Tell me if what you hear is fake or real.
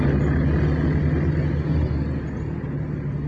real